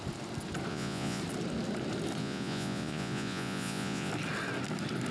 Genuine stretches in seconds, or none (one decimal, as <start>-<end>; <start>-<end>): 0.0-0.7; 1.2-2.2; 4.1-5.1